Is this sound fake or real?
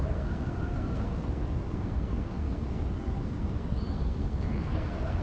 fake